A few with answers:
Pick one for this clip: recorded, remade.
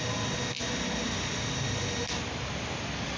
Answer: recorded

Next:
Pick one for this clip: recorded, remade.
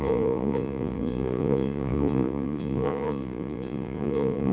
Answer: remade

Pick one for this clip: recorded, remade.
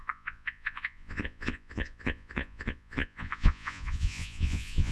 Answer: remade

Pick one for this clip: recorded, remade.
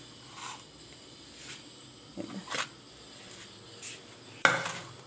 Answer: recorded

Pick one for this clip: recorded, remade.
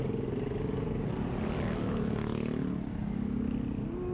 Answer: recorded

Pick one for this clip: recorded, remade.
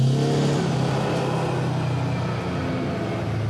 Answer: recorded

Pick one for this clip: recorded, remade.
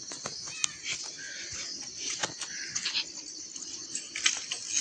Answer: recorded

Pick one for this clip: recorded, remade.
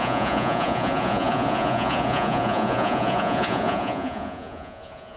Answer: remade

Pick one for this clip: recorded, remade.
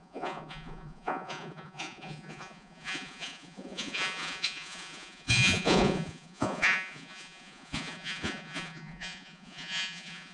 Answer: remade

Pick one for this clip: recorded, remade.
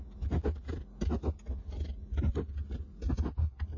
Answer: recorded